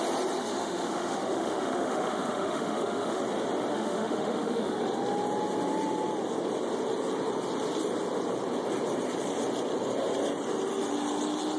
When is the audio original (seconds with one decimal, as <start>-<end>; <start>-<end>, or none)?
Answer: 0.0-0.4; 3.2-3.7; 4.8-11.6